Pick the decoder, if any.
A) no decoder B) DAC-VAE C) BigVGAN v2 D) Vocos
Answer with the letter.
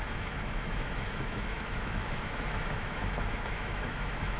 B